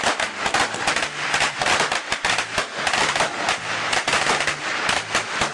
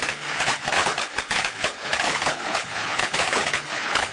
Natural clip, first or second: first